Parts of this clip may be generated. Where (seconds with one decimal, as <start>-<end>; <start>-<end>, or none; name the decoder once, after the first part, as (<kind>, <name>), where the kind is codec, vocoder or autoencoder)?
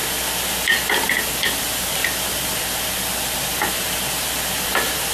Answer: 1.6-2.0 (vocoder, BigVGAN v2)